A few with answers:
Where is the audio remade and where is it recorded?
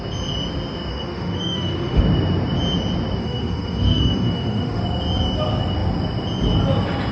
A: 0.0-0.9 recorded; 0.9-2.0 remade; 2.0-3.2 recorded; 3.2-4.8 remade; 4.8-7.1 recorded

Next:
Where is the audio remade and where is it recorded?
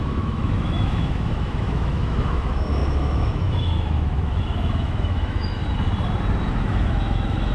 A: 0.0-5.6 remade; 5.6-6.5 recorded; 6.5-7.5 remade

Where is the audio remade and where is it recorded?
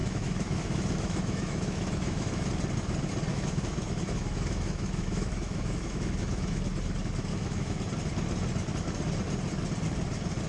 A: 0.0-2.5 remade; 2.5-3.3 recorded; 3.3-6.6 remade; 6.6-7.3 recorded; 7.3-7.8 remade; 7.8-10.5 recorded